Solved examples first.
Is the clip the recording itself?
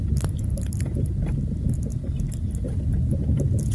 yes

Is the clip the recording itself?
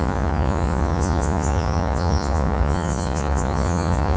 no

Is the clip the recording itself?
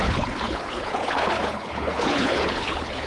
no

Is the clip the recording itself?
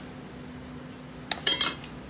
yes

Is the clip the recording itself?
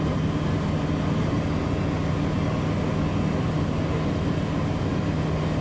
yes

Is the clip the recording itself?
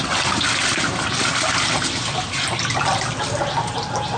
yes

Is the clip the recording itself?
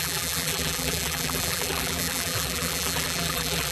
no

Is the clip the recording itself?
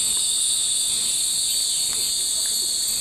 yes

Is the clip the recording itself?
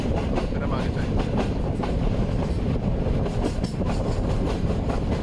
no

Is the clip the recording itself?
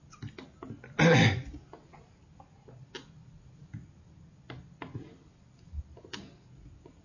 yes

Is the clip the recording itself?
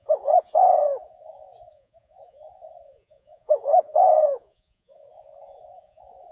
no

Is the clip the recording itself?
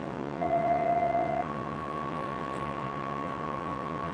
no